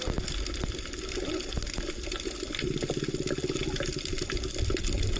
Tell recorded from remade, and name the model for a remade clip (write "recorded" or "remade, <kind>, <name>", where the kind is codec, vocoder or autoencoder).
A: recorded